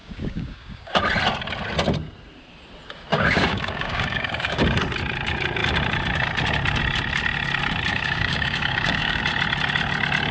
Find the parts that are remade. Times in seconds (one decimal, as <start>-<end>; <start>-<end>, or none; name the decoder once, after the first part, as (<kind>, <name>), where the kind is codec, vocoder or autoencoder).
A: 0.0-1.0 (codec, DAC); 3.1-4.6; 7.9-9.2